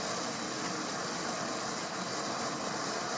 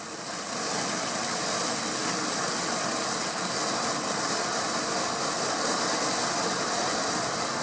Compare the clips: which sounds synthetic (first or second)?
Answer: first